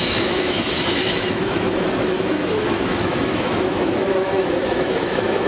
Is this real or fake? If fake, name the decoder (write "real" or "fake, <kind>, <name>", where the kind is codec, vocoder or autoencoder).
fake, autoencoder, DAC-VAE